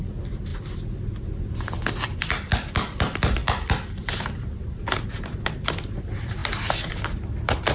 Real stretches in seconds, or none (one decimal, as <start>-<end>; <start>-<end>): 0.0-7.7